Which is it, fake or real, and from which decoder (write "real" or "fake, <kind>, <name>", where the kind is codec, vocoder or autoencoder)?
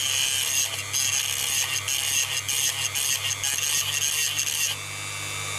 real